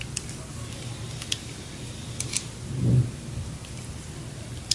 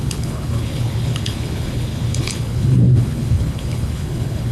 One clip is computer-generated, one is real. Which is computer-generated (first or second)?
second